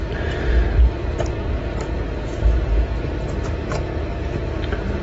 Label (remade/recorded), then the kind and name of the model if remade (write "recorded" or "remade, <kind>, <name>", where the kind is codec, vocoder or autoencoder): recorded